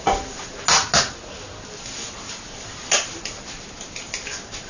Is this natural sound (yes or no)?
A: yes